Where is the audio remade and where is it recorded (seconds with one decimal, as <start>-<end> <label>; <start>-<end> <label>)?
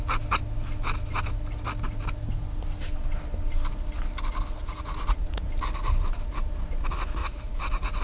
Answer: 0.0-4.6 recorded; 4.6-5.5 remade; 5.5-7.2 recorded; 7.2-8.0 remade